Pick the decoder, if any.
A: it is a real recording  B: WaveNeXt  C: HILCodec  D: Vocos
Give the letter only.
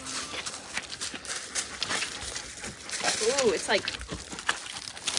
A